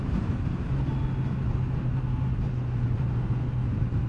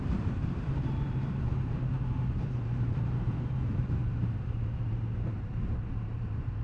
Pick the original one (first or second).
first